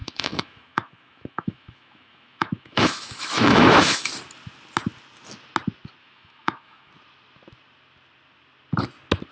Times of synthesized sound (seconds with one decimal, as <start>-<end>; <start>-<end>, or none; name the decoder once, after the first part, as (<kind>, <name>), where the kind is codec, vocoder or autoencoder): 0.0-4.1 (autoencoder, DAC-VAE); 6.0-6.9